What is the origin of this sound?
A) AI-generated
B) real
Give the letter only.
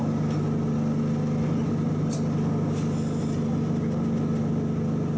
B